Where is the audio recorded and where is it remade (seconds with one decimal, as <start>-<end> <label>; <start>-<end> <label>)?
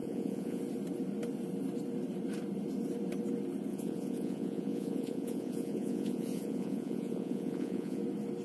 0.0-0.6 remade; 0.6-3.7 recorded; 3.7-8.0 remade; 8.0-8.4 recorded